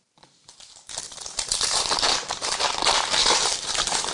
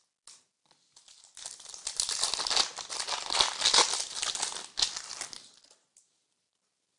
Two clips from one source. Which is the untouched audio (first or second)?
second